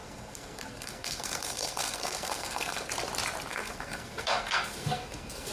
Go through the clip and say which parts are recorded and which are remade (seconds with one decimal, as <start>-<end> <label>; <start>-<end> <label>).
0.0-2.9 remade; 2.9-3.5 recorded; 3.5-5.5 remade